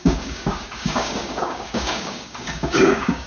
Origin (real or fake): fake